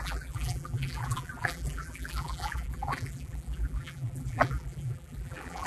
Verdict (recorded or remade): remade